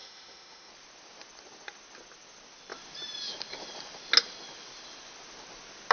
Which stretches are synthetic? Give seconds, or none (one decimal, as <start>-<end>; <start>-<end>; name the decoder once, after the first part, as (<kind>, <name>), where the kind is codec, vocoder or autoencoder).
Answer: 0.0-0.7 (autoencoder, DAC-VAE)